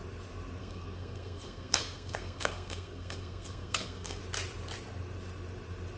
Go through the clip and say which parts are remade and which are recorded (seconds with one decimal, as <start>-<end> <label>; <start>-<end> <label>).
0.0-0.6 recorded; 0.6-4.2 remade; 4.2-6.0 recorded

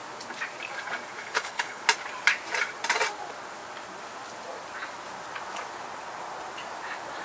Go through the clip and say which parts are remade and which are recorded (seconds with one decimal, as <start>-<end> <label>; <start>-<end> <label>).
0.0-1.2 recorded; 1.2-1.8 remade; 1.8-7.2 recorded

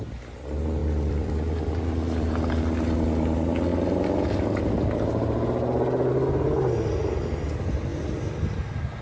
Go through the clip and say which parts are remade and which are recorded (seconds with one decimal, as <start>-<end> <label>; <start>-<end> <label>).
0.0-0.8 recorded; 0.8-1.3 remade; 1.3-9.0 recorded

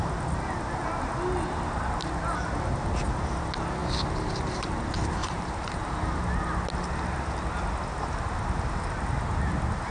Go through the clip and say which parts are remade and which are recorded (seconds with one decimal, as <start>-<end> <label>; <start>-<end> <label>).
0.0-3.8 recorded; 3.8-4.8 remade; 4.8-5.2 recorded; 5.2-6.2 remade; 6.2-9.9 recorded